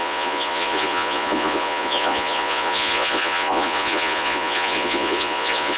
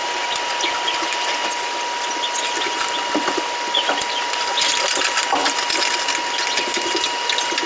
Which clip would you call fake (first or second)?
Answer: first